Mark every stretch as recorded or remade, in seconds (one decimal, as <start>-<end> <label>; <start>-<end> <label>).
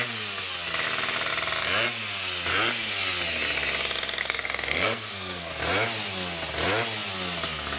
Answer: 0.0-4.2 recorded; 4.2-5.5 remade; 5.5-7.8 recorded